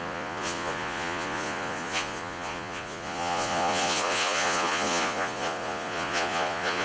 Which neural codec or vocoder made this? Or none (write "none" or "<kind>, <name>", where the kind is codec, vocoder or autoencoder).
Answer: vocoder, Vocos